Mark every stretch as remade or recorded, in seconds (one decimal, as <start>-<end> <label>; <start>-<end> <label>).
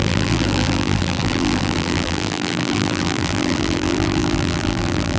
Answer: 0.0-5.2 remade